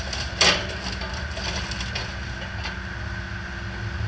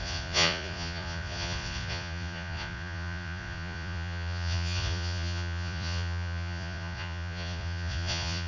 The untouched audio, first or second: first